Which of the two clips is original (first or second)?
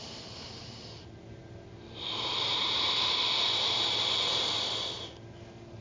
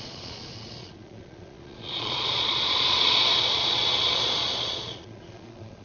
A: first